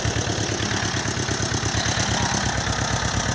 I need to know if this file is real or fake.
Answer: real